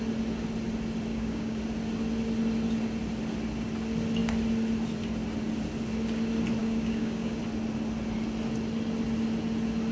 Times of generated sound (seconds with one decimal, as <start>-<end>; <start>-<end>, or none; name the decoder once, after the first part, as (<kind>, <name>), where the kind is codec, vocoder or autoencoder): 1.1-1.6 (codec, DAC); 6.6-7.4